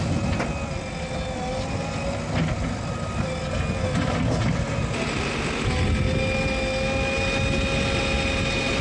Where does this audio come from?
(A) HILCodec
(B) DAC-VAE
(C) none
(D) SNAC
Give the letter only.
C